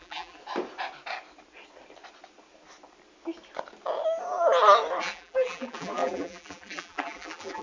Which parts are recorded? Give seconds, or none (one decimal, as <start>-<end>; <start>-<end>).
0.4-5.0